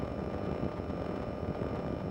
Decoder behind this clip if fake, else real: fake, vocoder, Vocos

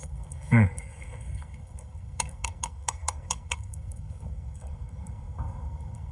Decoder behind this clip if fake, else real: fake, codec, SNAC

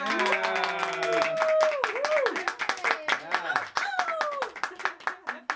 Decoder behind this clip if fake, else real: real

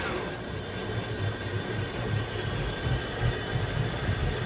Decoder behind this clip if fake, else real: real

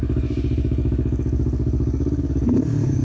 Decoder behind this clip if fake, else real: fake, codec, DAC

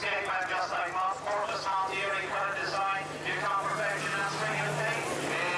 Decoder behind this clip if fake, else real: real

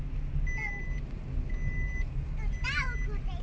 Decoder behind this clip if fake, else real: real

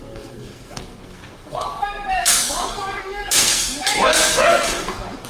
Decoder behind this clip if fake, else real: fake, codec, SNAC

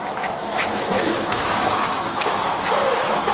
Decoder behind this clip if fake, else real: fake, autoencoder, DAC-VAE